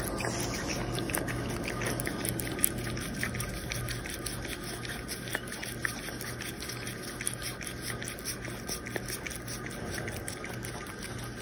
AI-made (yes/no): no